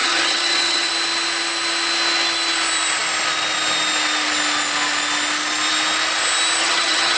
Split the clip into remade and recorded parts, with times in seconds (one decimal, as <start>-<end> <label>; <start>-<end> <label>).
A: 0.0-0.9 remade; 0.9-6.6 recorded; 6.6-7.2 remade